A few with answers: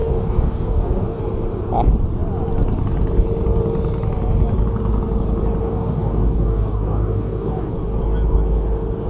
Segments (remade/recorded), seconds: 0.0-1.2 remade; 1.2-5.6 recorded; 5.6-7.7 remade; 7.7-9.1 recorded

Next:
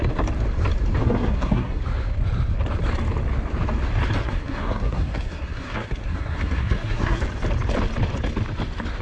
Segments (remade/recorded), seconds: 0.0-1.0 recorded; 1.0-1.8 remade; 1.8-4.2 recorded; 4.2-7.2 remade; 7.2-9.0 recorded

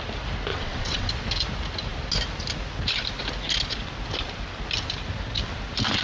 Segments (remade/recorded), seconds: 0.0-0.5 recorded; 0.5-1.1 remade; 1.1-6.0 recorded

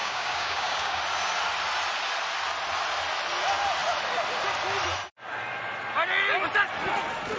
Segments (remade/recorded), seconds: 0.0-1.0 remade; 1.0-7.4 recorded

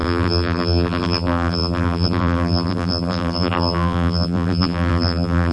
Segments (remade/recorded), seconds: 0.0-5.5 remade